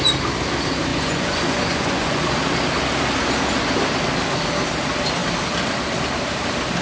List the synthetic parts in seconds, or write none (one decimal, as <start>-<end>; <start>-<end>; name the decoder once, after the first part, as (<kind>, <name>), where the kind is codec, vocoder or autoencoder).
0.9-2.2 (vocoder, Vocos)